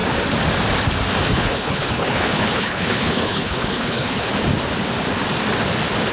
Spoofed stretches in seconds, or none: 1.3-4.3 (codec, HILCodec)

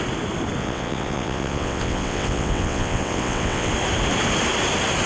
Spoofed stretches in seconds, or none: 0.6-3.7 (vocoder, WaveNeXt)

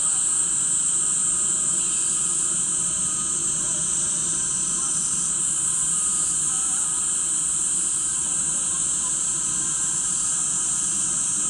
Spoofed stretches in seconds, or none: 3.4-6.0 (vocoder, BigVGAN v2)

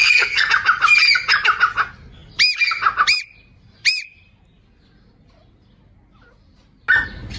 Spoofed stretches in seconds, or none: 0.0-0.5 (codec, SNAC)

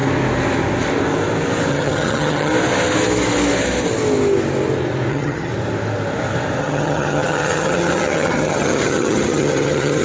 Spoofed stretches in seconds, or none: 1.7-2.5 (vocoder, HiFi-GAN); 5.1-5.5; 6.6-10.0

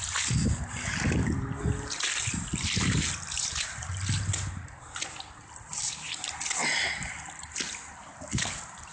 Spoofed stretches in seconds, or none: none